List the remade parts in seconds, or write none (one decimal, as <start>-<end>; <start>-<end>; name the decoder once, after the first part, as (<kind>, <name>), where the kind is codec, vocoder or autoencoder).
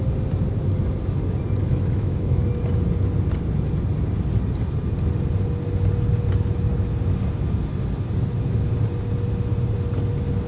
1.6-2.5 (autoencoder, DAC-VAE)